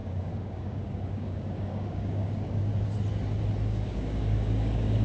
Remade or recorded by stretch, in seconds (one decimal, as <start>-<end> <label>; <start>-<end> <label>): 0.0-2.7 remade; 2.7-3.7 recorded; 3.7-5.0 remade